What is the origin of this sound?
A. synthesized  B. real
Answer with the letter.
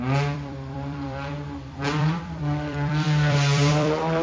A